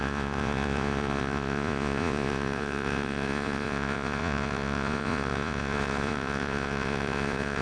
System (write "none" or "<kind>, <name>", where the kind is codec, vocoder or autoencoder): vocoder, Vocos